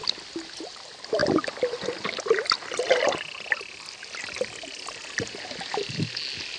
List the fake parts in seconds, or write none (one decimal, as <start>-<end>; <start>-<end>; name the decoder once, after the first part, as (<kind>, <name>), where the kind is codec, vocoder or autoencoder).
none

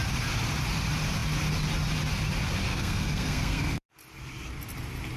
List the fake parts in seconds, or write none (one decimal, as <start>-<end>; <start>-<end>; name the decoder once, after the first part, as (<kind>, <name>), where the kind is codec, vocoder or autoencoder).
2.7-3.9 (codec, SNAC)

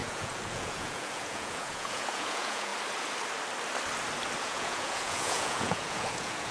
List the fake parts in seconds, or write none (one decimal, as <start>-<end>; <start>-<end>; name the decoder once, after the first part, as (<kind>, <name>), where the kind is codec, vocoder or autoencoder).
0.0-2.7 (vocoder, Vocos); 4.4-6.5

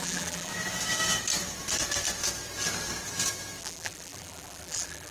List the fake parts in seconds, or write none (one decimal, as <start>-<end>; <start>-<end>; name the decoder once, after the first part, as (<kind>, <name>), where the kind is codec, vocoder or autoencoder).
0.0-0.5 (vocoder, BigVGAN v2); 3.6-5.1

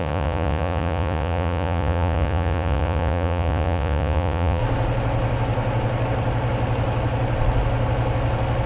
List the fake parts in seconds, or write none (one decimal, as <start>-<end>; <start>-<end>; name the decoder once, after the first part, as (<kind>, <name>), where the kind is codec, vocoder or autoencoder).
0.0-4.6 (vocoder, Vocos)

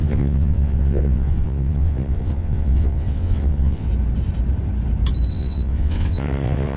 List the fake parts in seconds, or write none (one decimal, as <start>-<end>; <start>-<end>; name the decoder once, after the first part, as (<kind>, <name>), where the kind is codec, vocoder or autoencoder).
0.0-3.9 (vocoder, WaveNeXt); 5.3-6.8

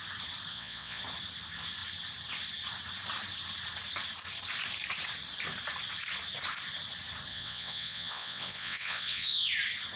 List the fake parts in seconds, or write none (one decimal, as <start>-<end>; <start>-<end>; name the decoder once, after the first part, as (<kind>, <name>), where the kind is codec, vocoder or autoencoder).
0.5-1.0 (vocoder, WaveNeXt); 7.3-9.5